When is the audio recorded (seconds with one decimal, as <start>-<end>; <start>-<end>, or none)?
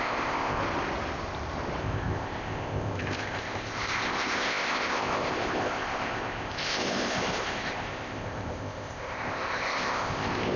0.6-1.8